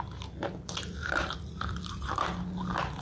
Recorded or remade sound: recorded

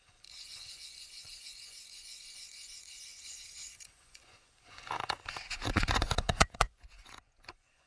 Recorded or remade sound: remade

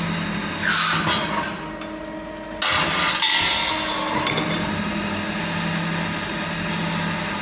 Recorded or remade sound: recorded